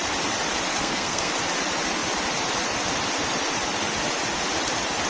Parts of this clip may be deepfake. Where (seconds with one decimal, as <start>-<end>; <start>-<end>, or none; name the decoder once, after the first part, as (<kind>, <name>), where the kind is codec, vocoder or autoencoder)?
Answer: 0.7-1.3 (codec, SNAC)